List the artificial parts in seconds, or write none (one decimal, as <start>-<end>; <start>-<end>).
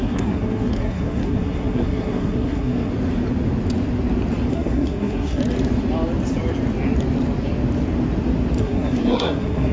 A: 0.0-2.9; 4.5-5.4; 8.6-9.7